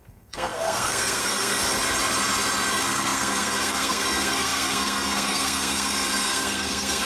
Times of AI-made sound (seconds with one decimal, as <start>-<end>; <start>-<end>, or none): 0.0-1.6; 2.7-7.0